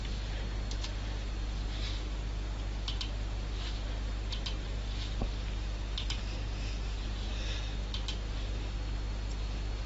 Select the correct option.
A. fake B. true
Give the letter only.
B